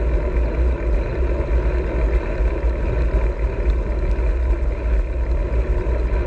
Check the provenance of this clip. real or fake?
real